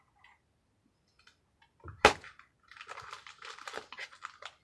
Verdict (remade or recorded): recorded